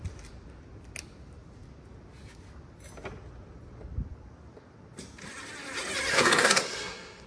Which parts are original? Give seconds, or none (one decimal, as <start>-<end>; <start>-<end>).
0.0-6.1

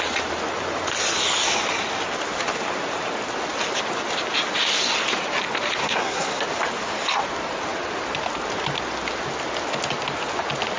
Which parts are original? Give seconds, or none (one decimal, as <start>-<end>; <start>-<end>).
0.0-5.8; 6.4-10.8

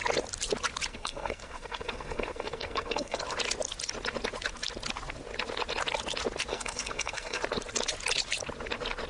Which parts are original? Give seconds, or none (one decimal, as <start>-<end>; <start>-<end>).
0.0-0.9; 3.2-6.5; 7.4-9.1

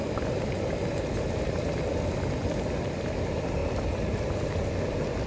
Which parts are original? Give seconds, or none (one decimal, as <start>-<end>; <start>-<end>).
0.0-5.3

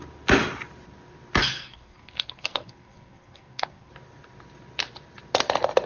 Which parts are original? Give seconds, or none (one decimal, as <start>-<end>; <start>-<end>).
0.0-1.4; 3.9-5.9

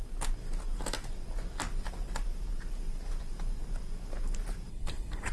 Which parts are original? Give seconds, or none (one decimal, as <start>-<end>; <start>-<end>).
0.0-4.7